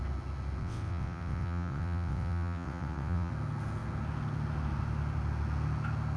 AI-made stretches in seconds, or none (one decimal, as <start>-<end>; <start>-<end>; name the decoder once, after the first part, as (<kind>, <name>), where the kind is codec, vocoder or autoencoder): 0.6-3.3 (vocoder, WaveNeXt)